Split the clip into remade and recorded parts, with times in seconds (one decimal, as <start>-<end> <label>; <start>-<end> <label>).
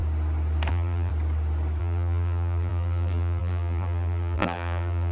0.0-0.7 recorded; 0.7-1.1 remade; 1.1-1.8 recorded; 1.8-5.1 remade